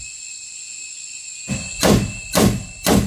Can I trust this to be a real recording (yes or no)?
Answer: no